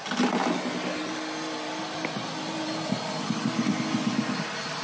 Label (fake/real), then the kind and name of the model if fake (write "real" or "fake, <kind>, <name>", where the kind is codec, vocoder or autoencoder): real